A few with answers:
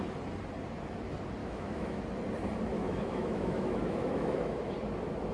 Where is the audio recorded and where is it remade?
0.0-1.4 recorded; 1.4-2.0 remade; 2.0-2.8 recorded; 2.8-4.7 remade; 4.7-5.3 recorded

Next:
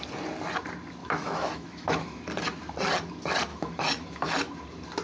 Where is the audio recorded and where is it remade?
0.0-1.0 recorded; 1.0-2.2 remade; 2.2-3.5 recorded; 3.5-4.3 remade; 4.3-5.0 recorded